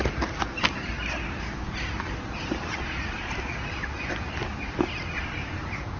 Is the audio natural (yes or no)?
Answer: yes